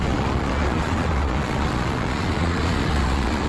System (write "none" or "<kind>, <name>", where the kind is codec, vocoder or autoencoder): vocoder, Vocos